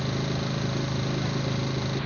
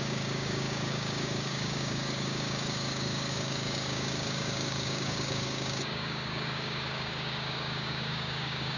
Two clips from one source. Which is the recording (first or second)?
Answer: first